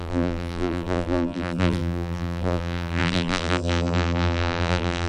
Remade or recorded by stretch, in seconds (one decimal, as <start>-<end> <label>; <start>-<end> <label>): 0.0-5.1 remade